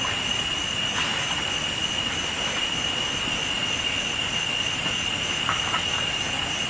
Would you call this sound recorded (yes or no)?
yes